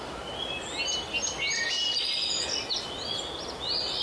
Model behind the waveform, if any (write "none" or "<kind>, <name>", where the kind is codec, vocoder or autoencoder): none